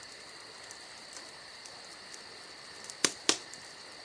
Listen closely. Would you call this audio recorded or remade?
recorded